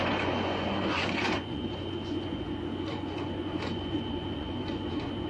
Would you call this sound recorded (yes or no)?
no